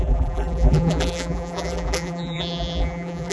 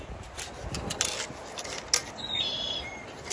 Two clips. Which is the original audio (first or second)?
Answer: second